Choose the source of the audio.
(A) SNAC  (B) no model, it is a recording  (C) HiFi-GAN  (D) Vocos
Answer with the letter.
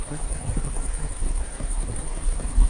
A